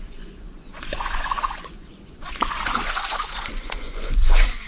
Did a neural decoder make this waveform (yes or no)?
yes